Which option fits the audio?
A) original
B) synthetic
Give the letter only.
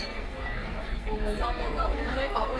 B